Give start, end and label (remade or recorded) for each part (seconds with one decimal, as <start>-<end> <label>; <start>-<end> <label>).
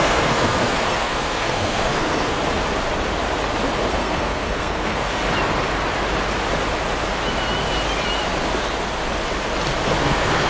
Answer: 0.0-2.4 remade; 2.4-3.9 recorded; 3.9-5.2 remade; 5.2-10.0 recorded; 10.0-10.5 remade